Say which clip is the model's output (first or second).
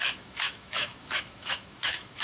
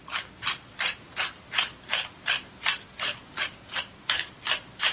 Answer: first